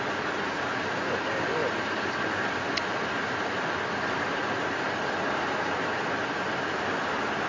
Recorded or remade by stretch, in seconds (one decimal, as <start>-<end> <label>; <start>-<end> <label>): 0.0-7.5 recorded